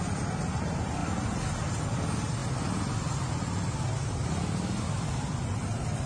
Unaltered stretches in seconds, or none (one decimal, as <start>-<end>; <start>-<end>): 0.0-6.1